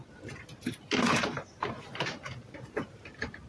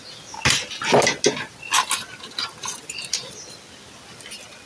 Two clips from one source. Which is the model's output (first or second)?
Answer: first